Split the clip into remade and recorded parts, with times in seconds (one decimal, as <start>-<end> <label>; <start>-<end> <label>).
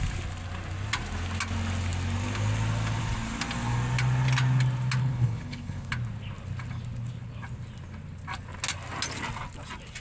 0.0-5.0 recorded; 5.0-5.9 remade; 5.9-10.0 recorded